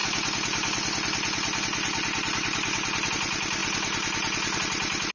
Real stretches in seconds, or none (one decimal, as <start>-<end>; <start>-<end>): 0.0-5.1